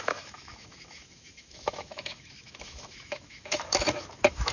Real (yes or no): no